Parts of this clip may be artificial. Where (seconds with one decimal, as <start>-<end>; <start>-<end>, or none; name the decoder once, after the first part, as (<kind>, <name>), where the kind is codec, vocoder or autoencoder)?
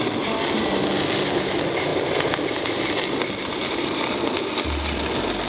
1.9-5.1 (vocoder, BigVGAN v2)